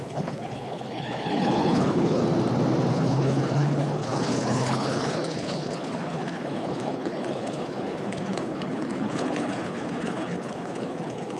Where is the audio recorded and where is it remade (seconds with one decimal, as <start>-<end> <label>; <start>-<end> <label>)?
0.0-2.2 remade; 2.2-2.9 recorded; 2.9-11.4 remade